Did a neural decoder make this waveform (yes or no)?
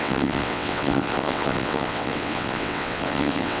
yes